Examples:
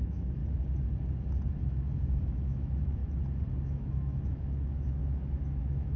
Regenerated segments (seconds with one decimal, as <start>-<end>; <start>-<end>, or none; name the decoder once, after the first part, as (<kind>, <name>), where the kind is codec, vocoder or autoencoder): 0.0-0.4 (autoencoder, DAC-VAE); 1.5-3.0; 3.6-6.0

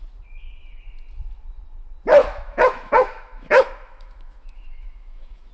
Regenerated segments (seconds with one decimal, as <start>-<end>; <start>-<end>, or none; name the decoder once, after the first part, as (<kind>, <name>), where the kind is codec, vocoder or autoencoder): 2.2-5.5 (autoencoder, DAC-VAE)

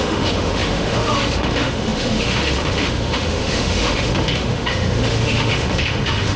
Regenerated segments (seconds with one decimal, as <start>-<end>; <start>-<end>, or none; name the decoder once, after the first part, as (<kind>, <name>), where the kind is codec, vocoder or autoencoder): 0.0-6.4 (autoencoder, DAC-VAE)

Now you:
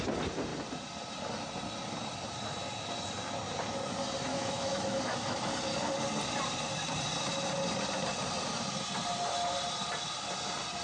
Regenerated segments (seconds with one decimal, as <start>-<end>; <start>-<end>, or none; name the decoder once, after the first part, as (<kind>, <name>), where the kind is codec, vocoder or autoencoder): 4.3-5.5 (autoencoder, DAC-VAE)